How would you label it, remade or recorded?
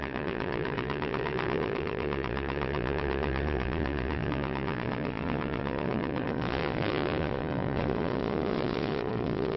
remade